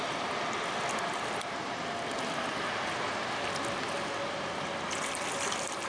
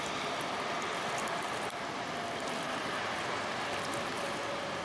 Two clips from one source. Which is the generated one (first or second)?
second